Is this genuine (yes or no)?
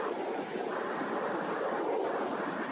yes